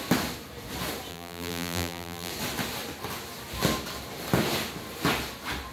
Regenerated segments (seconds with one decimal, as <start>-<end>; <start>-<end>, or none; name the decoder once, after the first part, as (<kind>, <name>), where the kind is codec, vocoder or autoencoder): 1.1-2.3 (vocoder, BigVGAN v2)